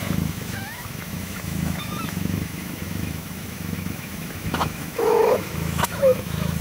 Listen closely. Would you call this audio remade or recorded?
remade